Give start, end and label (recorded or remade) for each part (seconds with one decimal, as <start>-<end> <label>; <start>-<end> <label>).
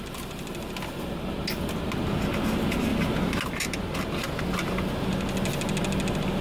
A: 0.0-6.4 recorded